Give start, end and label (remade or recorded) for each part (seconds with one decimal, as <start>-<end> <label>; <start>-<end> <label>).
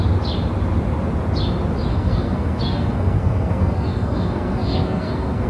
0.0-1.9 recorded; 1.9-5.5 remade